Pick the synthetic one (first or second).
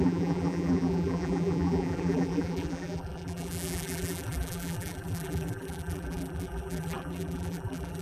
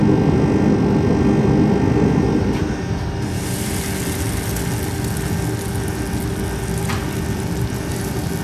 first